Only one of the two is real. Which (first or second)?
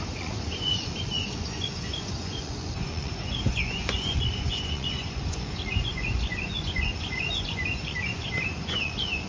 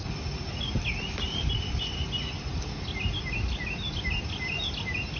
second